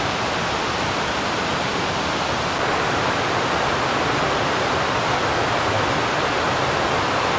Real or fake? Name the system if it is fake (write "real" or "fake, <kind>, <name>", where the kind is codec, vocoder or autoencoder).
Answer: real